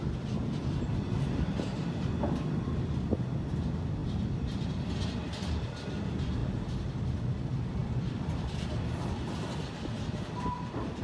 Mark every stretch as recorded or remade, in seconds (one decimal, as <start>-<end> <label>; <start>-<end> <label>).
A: 0.0-4.0 recorded; 4.0-5.0 remade; 5.0-7.8 recorded; 7.8-11.0 remade